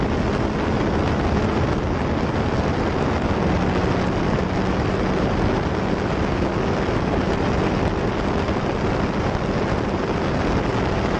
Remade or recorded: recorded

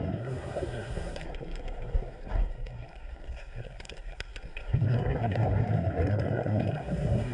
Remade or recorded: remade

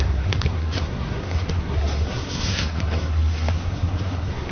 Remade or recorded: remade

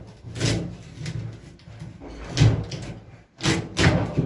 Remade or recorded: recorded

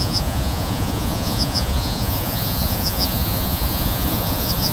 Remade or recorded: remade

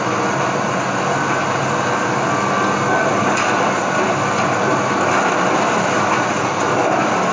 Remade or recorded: recorded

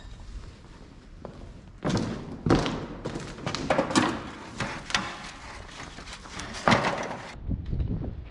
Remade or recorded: recorded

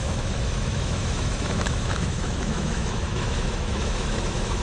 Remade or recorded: remade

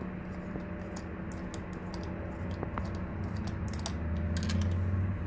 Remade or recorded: recorded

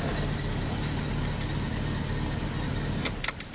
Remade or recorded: recorded